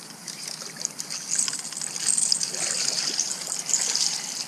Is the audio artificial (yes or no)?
no